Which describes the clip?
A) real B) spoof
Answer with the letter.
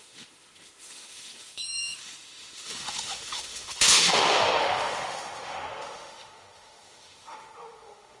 B